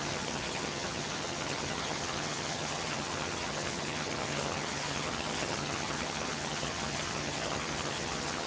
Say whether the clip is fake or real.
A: fake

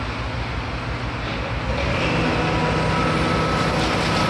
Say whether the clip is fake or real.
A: real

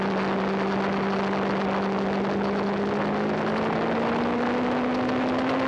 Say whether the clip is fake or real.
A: real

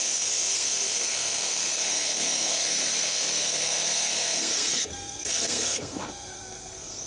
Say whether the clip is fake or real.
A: fake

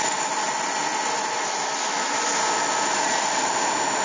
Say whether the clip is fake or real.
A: real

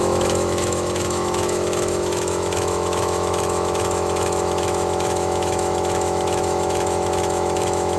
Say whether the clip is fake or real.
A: fake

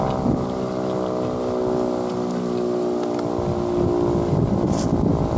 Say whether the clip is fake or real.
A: real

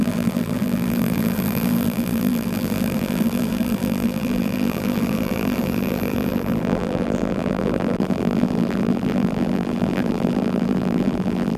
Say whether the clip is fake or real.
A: fake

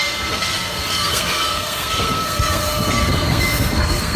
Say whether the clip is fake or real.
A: fake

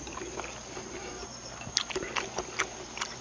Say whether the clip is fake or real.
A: real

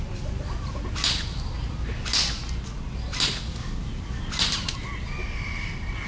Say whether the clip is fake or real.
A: real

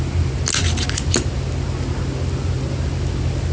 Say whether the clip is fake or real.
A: real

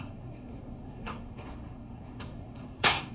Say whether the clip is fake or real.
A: fake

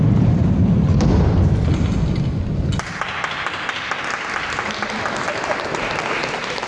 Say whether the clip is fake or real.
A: real